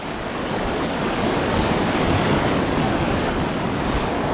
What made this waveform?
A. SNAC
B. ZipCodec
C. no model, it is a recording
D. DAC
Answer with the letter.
D